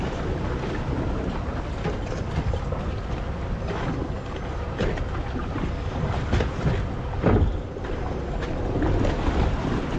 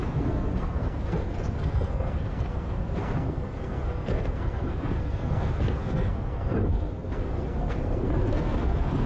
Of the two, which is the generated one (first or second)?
second